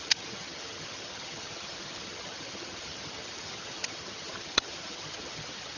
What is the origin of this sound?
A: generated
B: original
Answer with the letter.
A